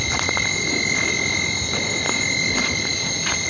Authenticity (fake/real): real